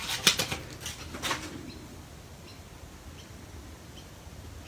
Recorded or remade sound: recorded